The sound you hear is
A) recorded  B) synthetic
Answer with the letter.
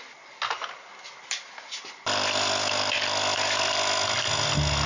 A